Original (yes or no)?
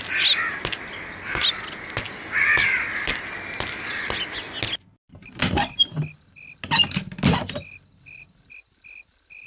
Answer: yes